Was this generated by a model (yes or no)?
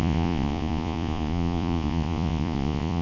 yes